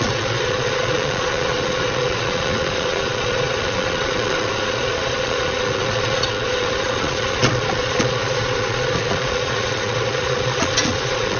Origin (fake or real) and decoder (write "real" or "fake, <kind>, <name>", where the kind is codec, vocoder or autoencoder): fake, vocoder, Vocos